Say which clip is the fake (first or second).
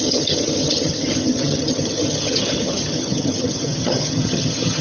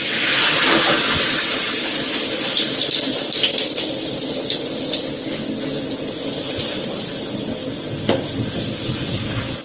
first